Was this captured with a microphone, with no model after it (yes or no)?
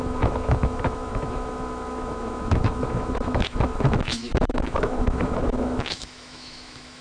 no